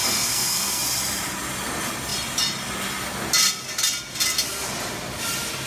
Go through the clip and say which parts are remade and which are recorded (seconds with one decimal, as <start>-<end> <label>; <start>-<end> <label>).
0.0-0.8 remade; 0.8-5.7 recorded